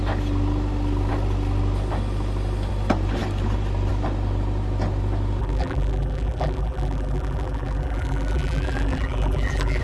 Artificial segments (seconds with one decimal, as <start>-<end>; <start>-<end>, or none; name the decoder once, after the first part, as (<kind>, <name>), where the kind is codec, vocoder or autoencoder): 5.4-9.8 (vocoder, BigVGAN v2)